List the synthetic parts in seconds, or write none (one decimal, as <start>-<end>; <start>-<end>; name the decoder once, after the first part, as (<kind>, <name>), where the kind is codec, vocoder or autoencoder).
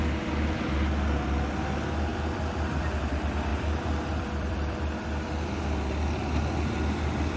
2.1-2.8 (vocoder, BigVGAN v2); 3.5-4.8